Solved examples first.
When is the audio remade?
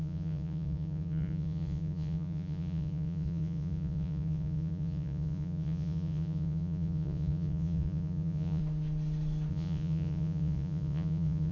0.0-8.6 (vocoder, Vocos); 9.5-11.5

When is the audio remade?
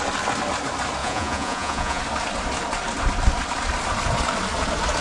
1.0-2.0 (vocoder, Vocos)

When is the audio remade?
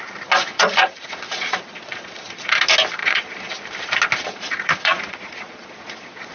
0.5-2.5 (vocoder, Vocos); 3.0-3.5; 4.2-6.3